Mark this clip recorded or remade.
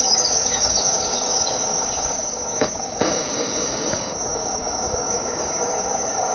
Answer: remade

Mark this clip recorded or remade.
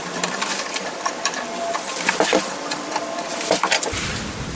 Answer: remade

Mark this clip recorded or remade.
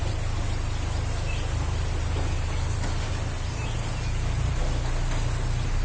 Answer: recorded